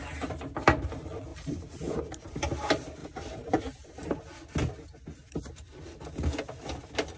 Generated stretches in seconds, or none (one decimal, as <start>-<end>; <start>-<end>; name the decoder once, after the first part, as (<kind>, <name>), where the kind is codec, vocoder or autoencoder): 1.3-2.0 (vocoder, BigVGAN v2); 3.0-4.2; 5.2-5.8